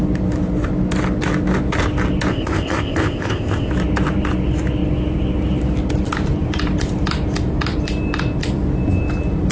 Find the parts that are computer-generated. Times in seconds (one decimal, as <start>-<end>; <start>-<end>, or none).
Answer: 2.3-3.7